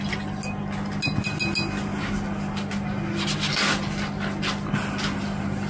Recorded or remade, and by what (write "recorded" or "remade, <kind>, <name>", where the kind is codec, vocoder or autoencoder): recorded